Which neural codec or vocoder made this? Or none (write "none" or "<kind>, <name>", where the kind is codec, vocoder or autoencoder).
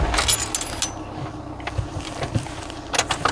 none